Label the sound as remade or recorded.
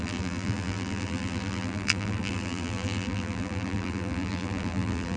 remade